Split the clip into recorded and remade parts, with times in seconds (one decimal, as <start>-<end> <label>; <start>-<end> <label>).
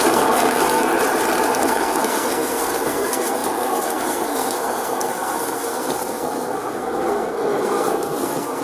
0.0-0.9 remade; 0.9-1.5 recorded; 1.5-8.6 remade